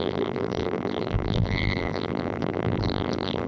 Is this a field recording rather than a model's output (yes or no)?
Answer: no